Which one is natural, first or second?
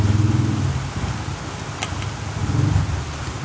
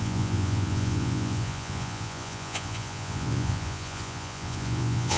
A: first